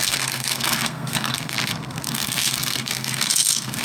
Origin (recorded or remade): remade